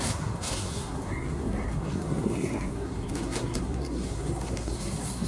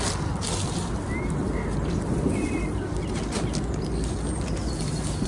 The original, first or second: second